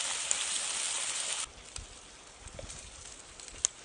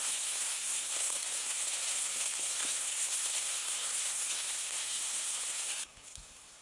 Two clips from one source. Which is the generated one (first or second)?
second